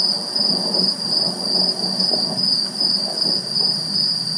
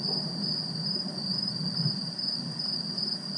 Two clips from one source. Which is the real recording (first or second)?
first